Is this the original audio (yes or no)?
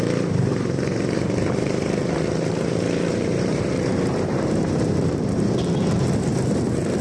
no